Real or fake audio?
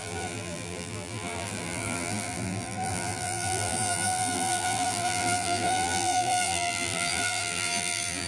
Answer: fake